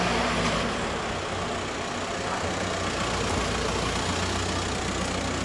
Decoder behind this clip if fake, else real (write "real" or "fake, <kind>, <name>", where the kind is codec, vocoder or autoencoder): real